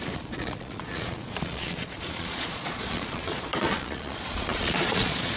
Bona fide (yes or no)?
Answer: no